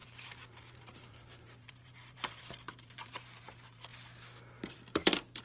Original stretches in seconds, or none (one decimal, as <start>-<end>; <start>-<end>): 3.9-4.7